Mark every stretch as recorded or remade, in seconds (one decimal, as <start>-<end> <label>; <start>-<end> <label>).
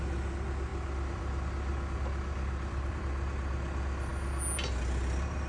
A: 0.0-0.7 recorded; 0.7-3.0 remade; 3.0-5.5 recorded